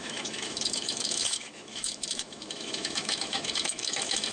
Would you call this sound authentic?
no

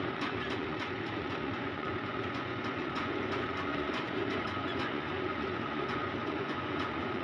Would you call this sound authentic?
no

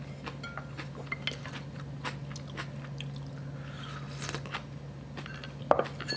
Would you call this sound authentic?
yes